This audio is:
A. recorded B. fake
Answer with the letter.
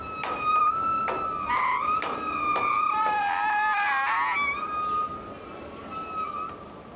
A